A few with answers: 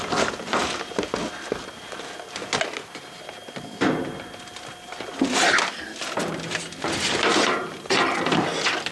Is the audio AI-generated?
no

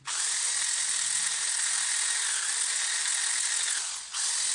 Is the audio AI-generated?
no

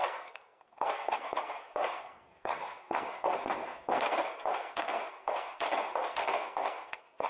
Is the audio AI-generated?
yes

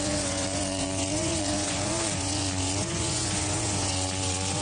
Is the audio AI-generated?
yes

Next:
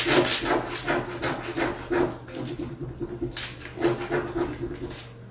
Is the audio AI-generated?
no